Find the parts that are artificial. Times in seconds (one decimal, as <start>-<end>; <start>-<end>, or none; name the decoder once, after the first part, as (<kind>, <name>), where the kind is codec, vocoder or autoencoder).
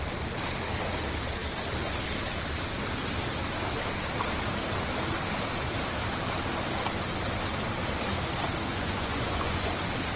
8.7-9.7 (vocoder, Vocos)